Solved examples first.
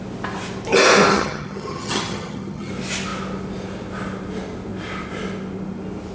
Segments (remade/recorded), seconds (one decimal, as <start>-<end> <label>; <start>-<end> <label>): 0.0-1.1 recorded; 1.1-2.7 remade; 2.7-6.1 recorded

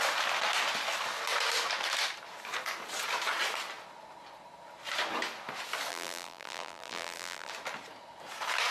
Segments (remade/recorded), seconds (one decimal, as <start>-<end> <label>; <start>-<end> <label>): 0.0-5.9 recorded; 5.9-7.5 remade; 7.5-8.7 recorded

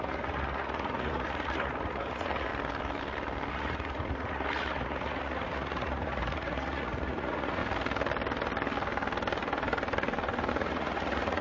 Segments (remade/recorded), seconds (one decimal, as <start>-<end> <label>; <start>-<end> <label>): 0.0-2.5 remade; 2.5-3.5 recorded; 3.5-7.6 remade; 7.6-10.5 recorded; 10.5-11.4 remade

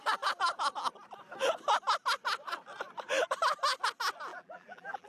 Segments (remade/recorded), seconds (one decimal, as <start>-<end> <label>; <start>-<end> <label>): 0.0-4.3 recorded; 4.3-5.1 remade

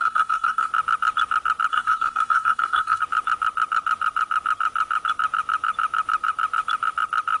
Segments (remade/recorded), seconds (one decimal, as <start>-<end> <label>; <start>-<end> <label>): 0.0-0.7 remade; 0.7-1.7 recorded; 1.7-3.0 remade; 3.0-7.4 recorded

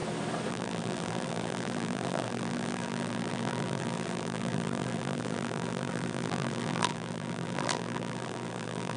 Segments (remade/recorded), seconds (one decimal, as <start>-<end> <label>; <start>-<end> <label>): 0.0-0.5 recorded; 0.5-9.0 remade

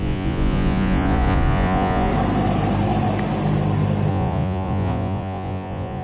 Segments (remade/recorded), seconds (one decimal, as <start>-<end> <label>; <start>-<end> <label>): 0.0-2.1 remade; 2.1-4.1 recorded; 4.1-6.0 remade

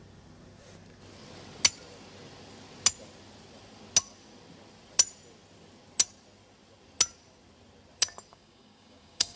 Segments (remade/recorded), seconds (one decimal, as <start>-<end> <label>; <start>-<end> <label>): 0.0-8.3 recorded; 8.3-9.4 remade